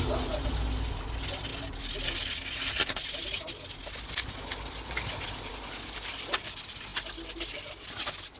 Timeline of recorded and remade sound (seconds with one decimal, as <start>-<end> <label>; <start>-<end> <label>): 0.0-8.4 recorded

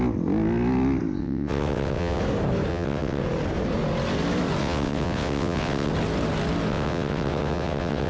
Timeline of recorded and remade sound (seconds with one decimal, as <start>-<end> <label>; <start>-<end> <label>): 0.0-1.2 recorded; 1.2-2.2 remade; 2.2-2.7 recorded; 2.7-3.2 remade; 3.2-4.6 recorded; 4.6-5.9 remade; 5.9-6.7 recorded; 6.7-8.1 remade

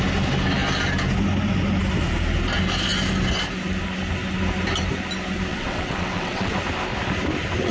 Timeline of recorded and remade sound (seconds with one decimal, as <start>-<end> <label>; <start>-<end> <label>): 0.0-5.5 recorded; 5.5-6.5 remade; 6.5-7.7 recorded